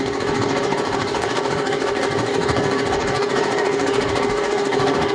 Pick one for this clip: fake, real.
fake